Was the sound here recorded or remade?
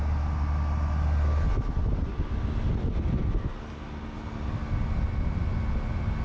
recorded